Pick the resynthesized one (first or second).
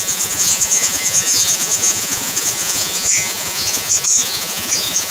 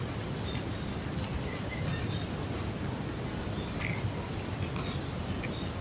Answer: first